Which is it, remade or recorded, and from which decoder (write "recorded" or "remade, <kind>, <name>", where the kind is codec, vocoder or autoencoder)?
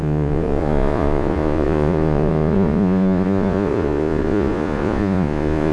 remade, vocoder, Vocos